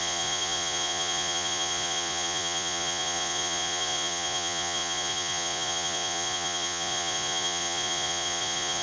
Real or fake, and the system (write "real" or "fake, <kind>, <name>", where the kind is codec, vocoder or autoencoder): fake, vocoder, Vocos